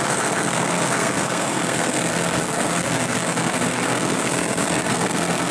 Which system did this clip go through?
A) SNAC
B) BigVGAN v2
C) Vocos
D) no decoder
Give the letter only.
A